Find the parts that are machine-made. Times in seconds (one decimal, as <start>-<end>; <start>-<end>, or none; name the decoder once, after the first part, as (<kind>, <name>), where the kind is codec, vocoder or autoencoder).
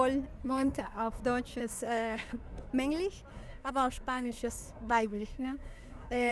0.4-1.2 (codec, SNAC); 1.6-2.7; 3.3-6.3